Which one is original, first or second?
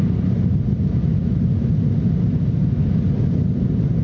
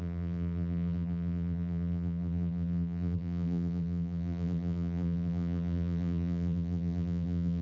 first